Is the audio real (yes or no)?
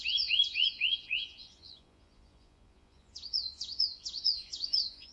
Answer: no